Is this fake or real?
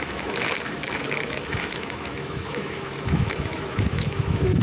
fake